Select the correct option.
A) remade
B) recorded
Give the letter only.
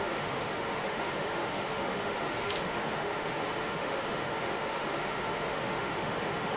A